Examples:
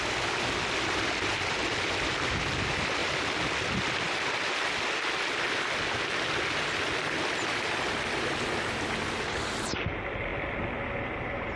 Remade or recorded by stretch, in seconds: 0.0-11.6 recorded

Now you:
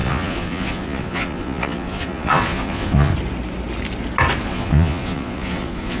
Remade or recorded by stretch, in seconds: 0.0-3.1 remade; 3.1-4.4 recorded; 4.4-6.0 remade

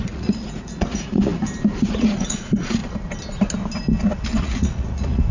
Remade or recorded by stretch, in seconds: 0.0-1.3 remade; 1.3-1.9 recorded; 1.9-2.8 remade; 2.8-4.4 recorded; 4.4-5.3 remade

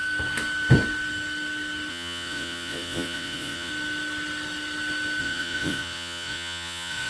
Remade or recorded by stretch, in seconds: 0.0-1.9 recorded; 1.9-3.7 remade; 3.7-5.2 recorded; 5.2-7.1 remade

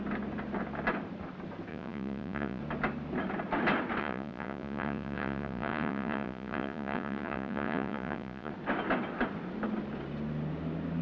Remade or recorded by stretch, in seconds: 0.0-1.7 recorded; 1.7-2.6 remade; 2.6-4.0 recorded; 4.0-8.5 remade; 8.5-11.0 recorded

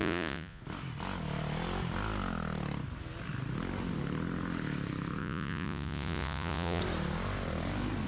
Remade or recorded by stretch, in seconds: 0.0-0.6 remade; 0.6-5.2 recorded; 5.2-6.8 remade; 6.8-8.1 recorded

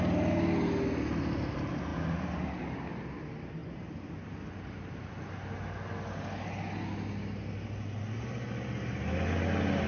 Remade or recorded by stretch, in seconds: 0.0-9.9 recorded

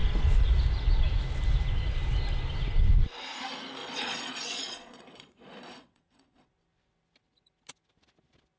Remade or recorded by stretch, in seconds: 0.0-3.8 recorded; 3.8-6.5 remade; 6.5-8.6 recorded